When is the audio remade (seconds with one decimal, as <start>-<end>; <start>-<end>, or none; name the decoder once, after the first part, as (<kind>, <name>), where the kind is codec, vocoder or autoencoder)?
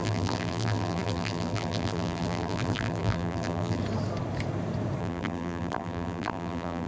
0.0-3.8 (vocoder, BigVGAN v2); 5.0-6.9